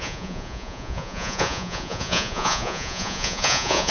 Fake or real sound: fake